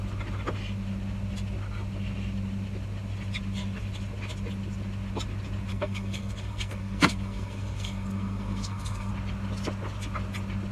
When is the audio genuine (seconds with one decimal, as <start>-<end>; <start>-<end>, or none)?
0.0-5.7; 9.1-10.7